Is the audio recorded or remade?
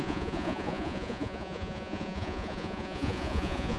remade